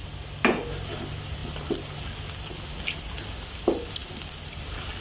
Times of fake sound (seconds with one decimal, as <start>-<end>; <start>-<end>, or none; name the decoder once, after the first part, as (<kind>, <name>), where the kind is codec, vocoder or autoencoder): none